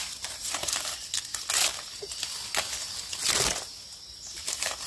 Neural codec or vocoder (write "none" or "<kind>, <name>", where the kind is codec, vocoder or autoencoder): none